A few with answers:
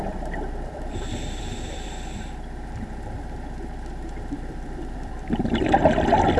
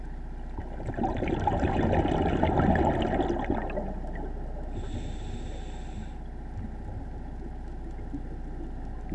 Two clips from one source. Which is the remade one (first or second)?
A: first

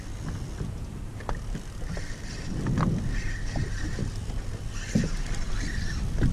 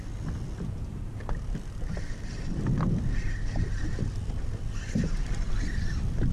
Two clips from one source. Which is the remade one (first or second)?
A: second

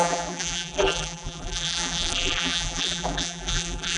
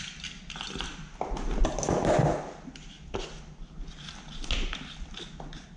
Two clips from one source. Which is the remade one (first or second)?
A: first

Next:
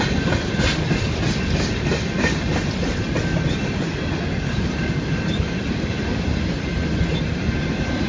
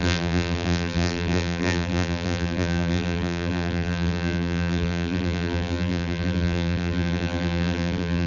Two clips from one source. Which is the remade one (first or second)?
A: second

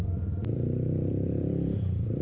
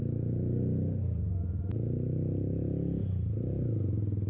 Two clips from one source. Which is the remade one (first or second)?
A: first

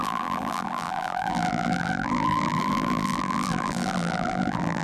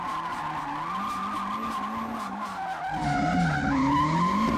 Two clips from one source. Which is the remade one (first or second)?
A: first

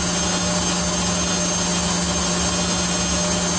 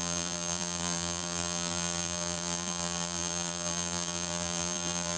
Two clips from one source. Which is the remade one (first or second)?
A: second